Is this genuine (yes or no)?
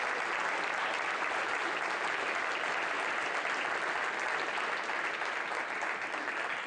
yes